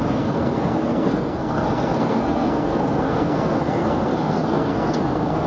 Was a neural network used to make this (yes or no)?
yes